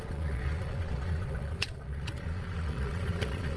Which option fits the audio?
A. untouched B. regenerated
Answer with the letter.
B